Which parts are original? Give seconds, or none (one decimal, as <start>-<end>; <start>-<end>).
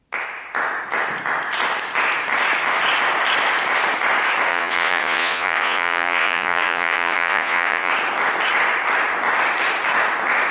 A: 0.0-4.5; 7.9-10.5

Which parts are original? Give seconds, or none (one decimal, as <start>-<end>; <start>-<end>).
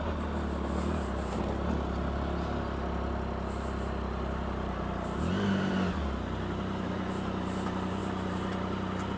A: 0.0-9.2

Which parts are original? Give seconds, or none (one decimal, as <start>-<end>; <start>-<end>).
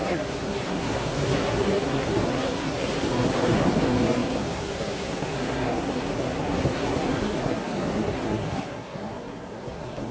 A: none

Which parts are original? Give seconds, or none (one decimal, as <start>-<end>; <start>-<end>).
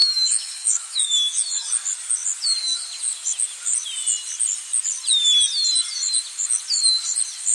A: 1.7-7.5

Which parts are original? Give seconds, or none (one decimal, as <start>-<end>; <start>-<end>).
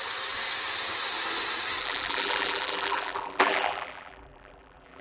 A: 0.0-1.8